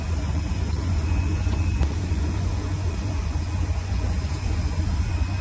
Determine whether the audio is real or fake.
fake